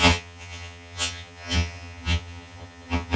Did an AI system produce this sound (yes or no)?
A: yes